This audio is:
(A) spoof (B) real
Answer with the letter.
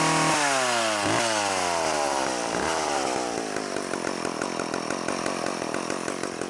B